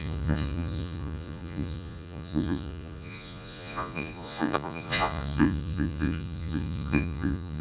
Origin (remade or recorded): remade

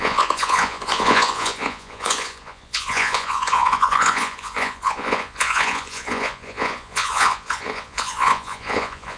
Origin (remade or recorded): remade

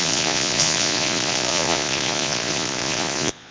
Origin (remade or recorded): remade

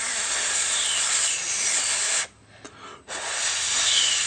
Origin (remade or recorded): recorded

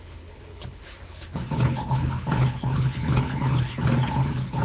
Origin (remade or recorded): remade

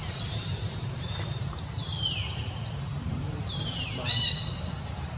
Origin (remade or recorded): remade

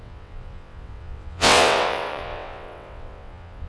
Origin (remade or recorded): remade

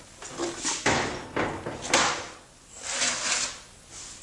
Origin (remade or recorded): recorded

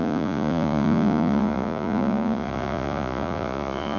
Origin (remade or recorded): remade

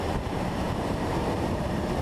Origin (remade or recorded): remade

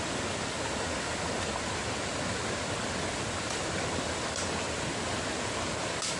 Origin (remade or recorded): recorded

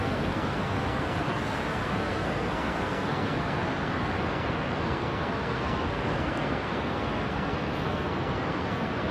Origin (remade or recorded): remade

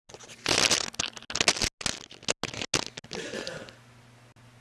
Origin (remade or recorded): recorded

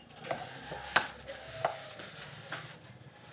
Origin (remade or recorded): recorded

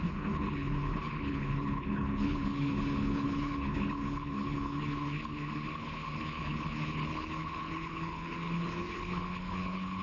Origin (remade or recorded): remade